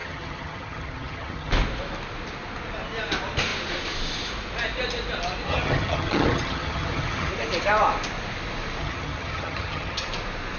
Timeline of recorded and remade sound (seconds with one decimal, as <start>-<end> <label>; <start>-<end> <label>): 0.0-1.5 remade; 1.5-5.5 recorded; 5.5-7.3 remade; 7.3-8.8 recorded; 8.8-10.1 remade; 10.1-10.6 recorded